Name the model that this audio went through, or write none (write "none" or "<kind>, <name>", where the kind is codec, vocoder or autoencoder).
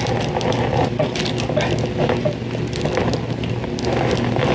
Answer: none